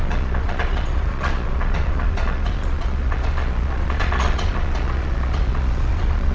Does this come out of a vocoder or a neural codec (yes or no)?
yes